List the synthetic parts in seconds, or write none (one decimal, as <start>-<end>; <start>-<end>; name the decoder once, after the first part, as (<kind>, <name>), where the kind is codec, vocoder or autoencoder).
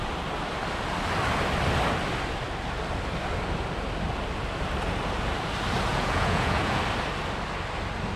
5.9-6.8 (vocoder, Vocos)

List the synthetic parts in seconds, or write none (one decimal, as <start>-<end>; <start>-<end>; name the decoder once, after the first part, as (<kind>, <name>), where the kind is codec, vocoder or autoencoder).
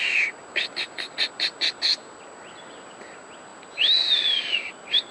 none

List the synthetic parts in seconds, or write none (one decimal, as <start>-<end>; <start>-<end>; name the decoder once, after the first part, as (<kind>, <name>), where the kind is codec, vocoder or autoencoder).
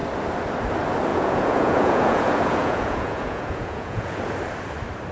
1.1-4.2 (vocoder, Vocos)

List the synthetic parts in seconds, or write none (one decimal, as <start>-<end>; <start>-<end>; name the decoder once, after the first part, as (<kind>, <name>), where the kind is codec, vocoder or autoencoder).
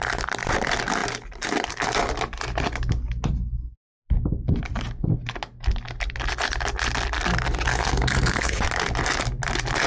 7.7-8.6 (codec, SNAC)